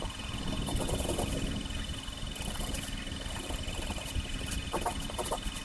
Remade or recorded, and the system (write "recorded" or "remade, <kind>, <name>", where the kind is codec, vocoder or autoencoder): remade, vocoder, BigVGAN v2